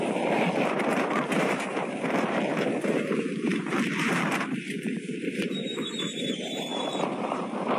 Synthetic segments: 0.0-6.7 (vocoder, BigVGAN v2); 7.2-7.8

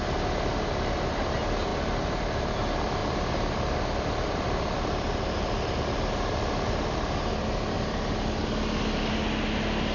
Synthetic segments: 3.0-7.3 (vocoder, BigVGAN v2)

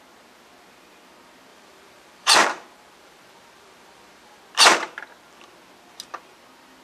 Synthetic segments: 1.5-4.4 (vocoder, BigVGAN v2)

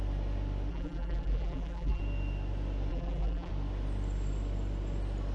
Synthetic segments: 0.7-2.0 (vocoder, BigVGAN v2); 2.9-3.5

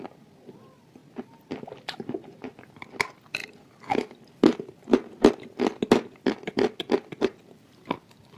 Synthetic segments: 0.0-1.0 (vocoder, BigVGAN v2); 2.6-3.4; 7.4-8.4

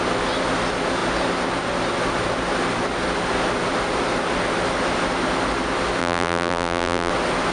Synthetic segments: 6.0-7.1 (vocoder, BigVGAN v2)

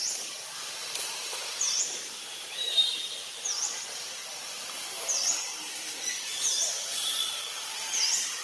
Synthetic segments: 0.0-8.4 (vocoder, BigVGAN v2)